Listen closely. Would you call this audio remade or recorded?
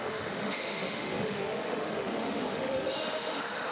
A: remade